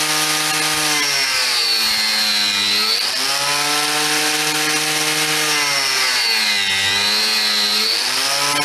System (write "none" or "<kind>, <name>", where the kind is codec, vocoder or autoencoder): none